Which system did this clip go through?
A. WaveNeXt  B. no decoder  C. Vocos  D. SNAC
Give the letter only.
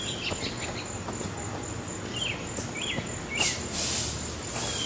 B